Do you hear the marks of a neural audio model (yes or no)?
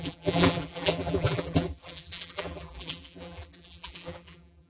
yes